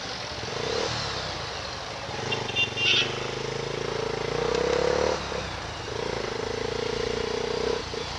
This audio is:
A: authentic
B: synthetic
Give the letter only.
A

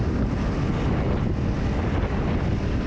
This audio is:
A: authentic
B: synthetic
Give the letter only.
A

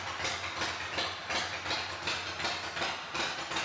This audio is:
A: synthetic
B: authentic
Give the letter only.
B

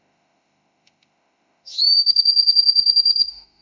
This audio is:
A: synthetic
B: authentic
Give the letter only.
A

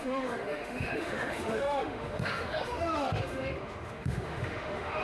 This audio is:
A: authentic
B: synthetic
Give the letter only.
B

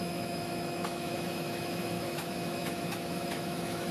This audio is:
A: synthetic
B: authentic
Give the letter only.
A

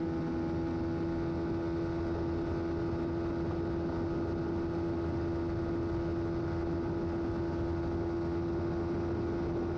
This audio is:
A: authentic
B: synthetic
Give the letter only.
A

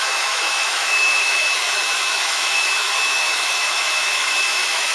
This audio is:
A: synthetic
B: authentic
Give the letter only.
A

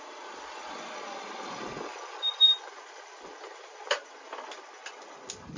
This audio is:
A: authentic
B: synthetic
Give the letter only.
A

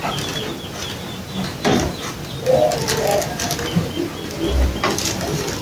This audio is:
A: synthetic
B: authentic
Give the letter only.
B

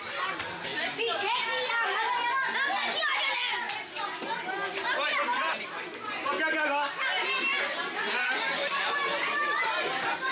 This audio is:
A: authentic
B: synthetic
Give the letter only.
A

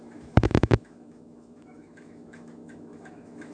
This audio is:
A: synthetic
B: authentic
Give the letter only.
A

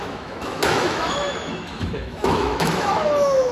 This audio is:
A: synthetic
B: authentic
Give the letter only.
A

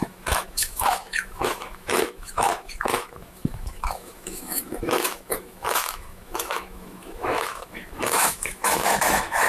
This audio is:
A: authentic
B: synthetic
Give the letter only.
B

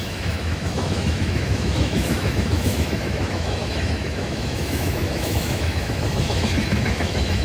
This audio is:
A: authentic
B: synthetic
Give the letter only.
B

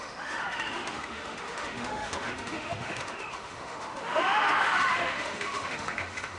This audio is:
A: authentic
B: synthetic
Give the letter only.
B